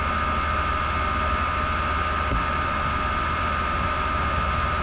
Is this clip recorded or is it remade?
recorded